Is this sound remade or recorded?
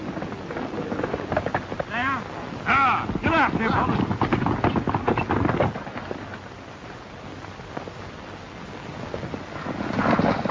recorded